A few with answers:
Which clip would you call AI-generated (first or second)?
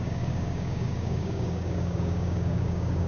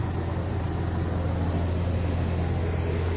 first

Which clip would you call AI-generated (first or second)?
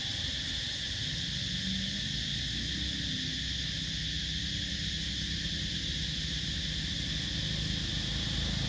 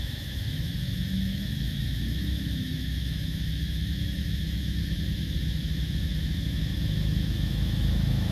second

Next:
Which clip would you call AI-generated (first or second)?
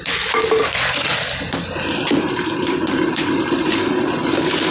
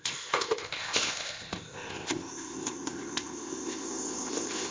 second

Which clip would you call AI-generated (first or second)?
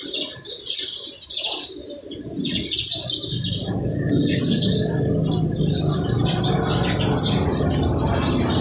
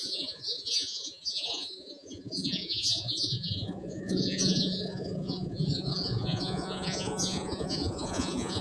second